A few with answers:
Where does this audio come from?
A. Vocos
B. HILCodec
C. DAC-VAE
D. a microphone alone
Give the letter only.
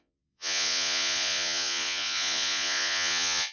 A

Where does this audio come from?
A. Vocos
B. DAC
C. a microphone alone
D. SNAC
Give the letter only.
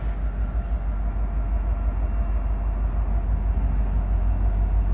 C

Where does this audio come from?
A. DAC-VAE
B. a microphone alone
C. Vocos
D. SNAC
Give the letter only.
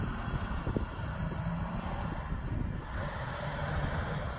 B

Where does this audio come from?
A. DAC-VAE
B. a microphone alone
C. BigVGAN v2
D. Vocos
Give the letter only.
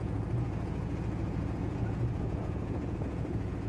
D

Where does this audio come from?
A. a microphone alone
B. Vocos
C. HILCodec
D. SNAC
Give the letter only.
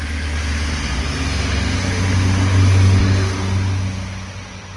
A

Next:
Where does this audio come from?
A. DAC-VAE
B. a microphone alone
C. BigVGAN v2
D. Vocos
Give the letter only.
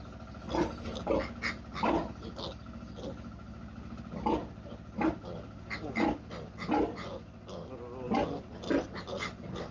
B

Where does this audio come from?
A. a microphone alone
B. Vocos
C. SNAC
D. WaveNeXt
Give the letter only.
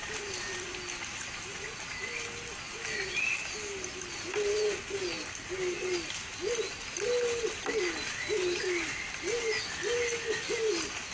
A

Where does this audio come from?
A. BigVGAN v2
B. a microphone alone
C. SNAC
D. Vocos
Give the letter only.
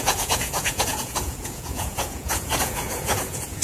D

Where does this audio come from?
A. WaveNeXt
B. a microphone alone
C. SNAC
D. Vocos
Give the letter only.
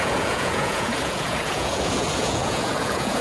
D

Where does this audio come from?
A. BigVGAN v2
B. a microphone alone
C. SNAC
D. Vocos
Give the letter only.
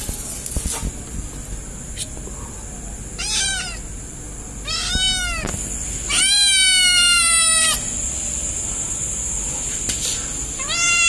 B